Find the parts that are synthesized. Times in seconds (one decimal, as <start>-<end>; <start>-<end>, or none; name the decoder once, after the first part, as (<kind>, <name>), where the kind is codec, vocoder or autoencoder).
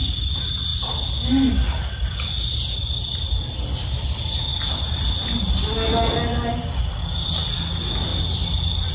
none